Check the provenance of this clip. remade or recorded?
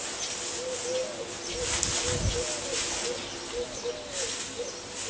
recorded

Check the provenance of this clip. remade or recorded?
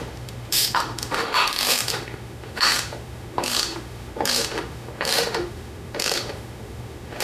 remade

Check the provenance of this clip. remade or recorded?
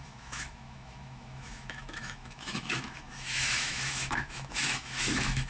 remade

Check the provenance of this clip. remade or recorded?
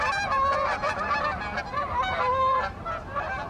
recorded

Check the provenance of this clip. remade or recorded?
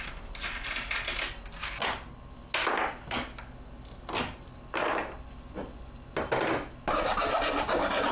recorded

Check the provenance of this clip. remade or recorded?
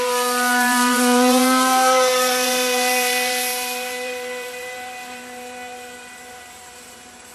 remade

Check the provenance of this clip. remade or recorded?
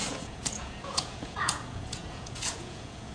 remade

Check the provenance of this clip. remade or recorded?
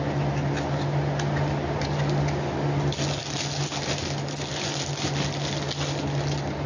recorded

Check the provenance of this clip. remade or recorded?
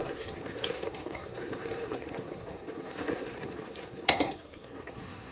remade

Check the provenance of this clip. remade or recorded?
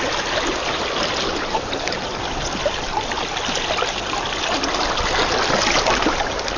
recorded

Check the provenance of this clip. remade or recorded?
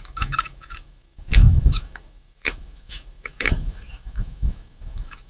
remade